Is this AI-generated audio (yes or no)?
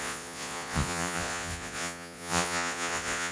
yes